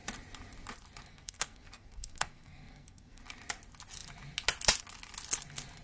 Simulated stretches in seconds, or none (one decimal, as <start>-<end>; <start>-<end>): 1.1-3.2